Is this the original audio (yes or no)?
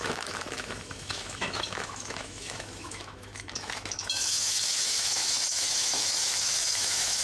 no